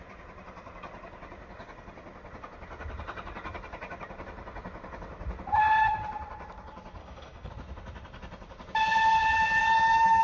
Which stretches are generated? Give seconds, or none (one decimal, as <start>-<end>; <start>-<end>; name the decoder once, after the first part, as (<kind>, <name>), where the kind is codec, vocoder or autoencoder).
7.0-7.5 (codec, SNAC)